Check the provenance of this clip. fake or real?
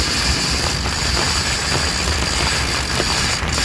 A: real